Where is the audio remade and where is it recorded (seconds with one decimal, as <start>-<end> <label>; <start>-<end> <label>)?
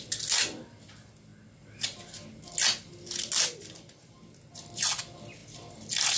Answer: 0.0-5.4 recorded; 5.4-6.2 remade